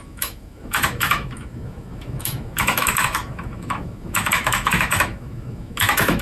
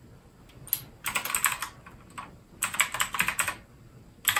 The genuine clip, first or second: second